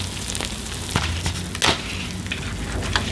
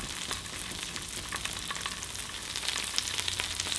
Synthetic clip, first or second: second